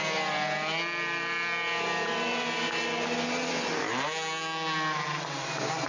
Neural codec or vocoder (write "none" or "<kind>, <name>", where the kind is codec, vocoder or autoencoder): none